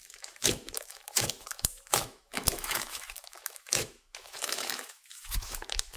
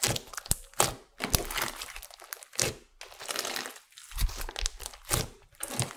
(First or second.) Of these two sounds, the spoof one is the first